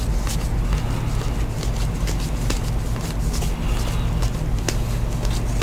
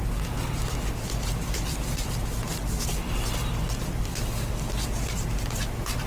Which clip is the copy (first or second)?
second